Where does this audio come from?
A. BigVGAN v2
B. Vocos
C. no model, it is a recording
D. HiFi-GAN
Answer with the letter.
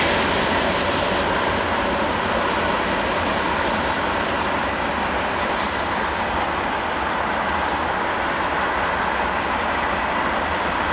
C